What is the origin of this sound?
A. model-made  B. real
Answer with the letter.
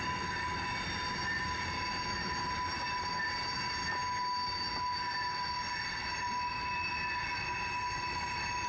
B